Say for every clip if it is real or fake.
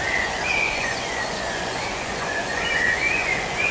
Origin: fake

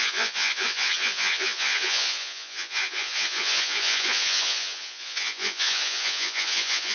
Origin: fake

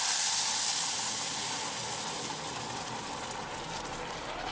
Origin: real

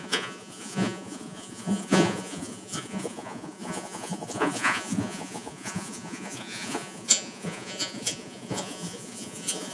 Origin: fake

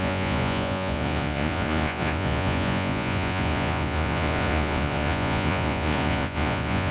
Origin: fake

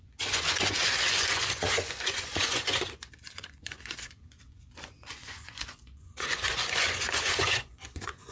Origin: fake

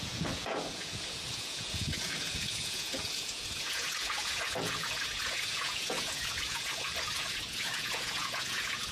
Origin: fake